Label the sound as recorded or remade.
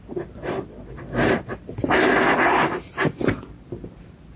recorded